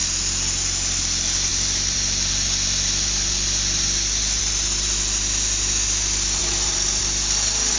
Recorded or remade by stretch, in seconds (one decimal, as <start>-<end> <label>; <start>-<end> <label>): 0.0-1.5 recorded; 1.5-4.4 remade; 4.4-6.4 recorded; 6.4-7.0 remade; 7.0-7.8 recorded